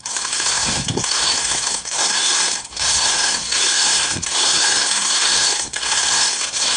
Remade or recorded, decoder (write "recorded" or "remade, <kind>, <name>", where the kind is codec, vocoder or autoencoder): remade, codec, SNAC